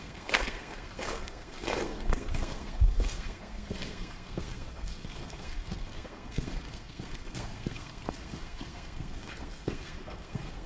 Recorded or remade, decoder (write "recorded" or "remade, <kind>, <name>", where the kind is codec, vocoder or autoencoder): remade, codec, SNAC